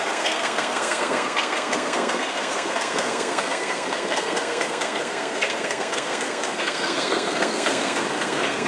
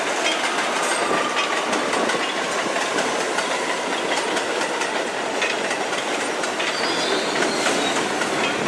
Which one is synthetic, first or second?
first